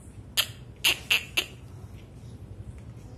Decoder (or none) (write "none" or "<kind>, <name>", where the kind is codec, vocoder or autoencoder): none